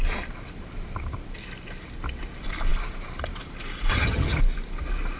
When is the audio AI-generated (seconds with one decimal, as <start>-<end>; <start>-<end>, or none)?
3.9-4.4